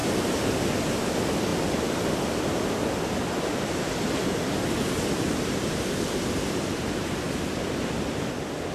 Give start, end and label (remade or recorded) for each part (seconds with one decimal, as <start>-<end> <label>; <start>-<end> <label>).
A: 0.0-8.7 recorded